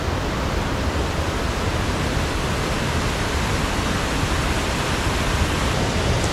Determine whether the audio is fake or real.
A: real